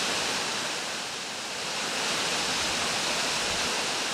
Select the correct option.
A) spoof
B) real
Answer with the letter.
B